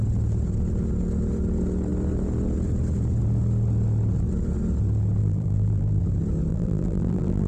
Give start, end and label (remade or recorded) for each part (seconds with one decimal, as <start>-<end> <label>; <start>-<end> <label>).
0.0-5.2 recorded; 5.2-6.0 remade; 6.0-6.5 recorded; 6.5-7.5 remade